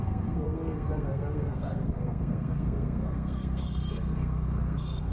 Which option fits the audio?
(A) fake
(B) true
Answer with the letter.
A